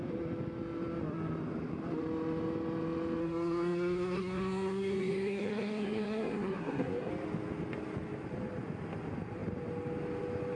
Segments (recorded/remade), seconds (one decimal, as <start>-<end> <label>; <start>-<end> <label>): 0.0-3.2 recorded; 3.2-7.1 remade; 7.1-10.6 recorded